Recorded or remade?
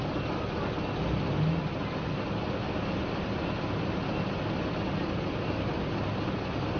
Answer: recorded